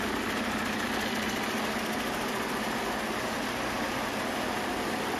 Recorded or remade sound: recorded